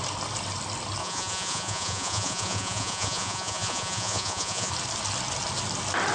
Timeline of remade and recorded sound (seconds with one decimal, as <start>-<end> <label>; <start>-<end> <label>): 0.0-1.0 recorded; 1.0-4.7 remade; 4.7-6.1 recorded